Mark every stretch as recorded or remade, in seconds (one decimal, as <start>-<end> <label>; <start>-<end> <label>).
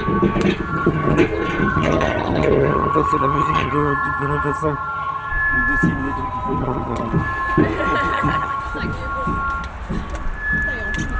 0.0-0.7 recorded; 0.7-1.2 remade; 1.2-1.6 recorded; 1.6-5.3 remade; 5.3-6.6 recorded; 6.6-7.1 remade; 7.1-8.1 recorded; 8.1-8.6 remade; 8.6-11.2 recorded